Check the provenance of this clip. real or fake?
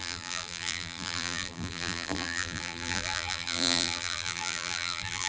fake